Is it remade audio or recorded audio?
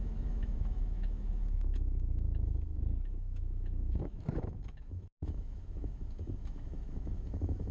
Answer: remade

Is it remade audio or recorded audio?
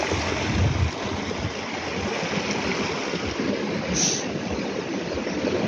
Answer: recorded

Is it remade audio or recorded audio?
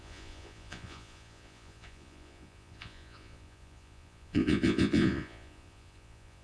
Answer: remade